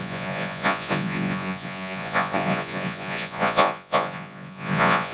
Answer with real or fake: fake